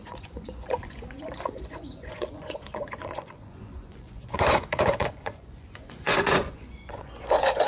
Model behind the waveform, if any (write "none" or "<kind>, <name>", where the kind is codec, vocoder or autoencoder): vocoder, Vocos